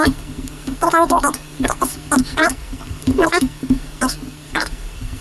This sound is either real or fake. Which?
fake